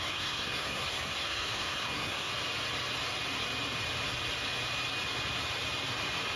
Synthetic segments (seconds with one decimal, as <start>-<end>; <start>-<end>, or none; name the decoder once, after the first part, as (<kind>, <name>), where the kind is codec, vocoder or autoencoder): 0.0-2.3 (codec, SNAC)